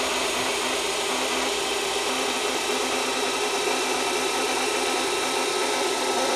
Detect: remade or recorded recorded